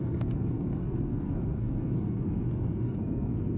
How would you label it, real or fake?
fake